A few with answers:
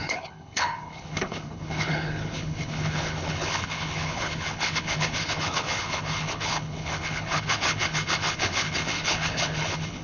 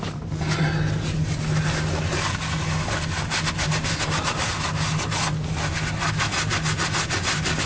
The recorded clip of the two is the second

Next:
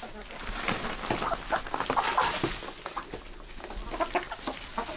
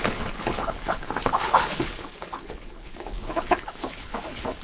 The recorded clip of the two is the first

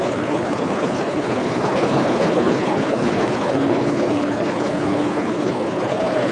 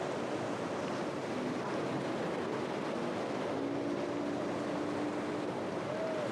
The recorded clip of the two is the second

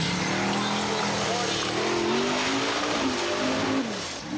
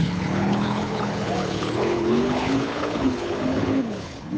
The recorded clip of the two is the first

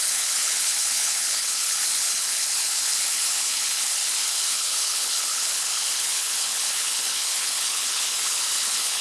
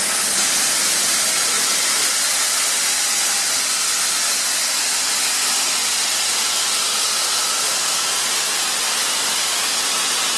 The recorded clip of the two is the second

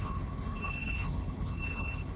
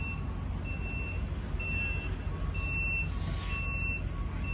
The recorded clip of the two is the second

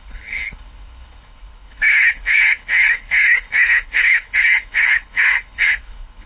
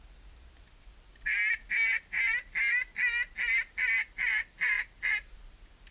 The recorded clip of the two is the second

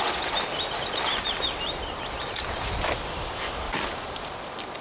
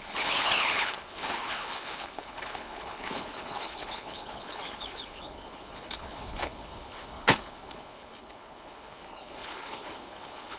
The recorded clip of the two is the first